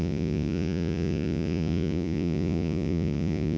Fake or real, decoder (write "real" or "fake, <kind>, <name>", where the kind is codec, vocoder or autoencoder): fake, vocoder, Vocos